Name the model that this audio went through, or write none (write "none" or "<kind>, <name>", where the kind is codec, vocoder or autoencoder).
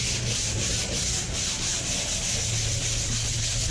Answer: none